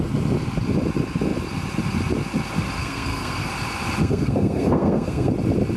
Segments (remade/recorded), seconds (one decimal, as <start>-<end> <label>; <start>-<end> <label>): 0.0-2.8 recorded; 2.8-3.5 remade; 3.5-4.0 recorded; 4.0-5.3 remade; 5.3-5.8 recorded